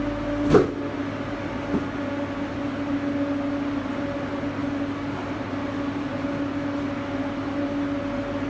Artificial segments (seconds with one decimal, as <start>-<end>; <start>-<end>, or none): none